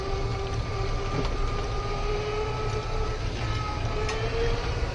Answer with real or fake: real